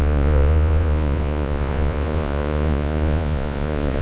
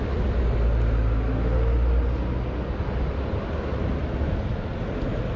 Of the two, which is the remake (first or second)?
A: first